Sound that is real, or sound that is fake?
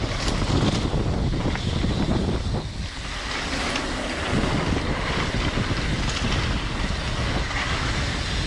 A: real